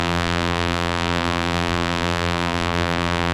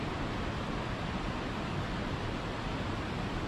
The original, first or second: second